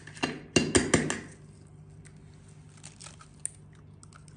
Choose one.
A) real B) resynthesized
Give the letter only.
A